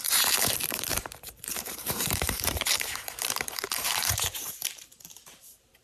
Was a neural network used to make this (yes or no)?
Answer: yes